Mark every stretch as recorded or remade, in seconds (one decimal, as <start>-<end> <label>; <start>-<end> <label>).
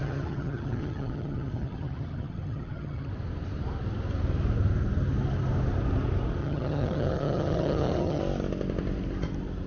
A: 0.0-3.1 remade; 3.1-6.4 recorded; 6.4-8.2 remade; 8.2-9.7 recorded